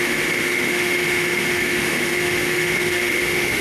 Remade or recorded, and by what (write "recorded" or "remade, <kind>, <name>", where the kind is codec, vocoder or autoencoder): remade, autoencoder, DAC-VAE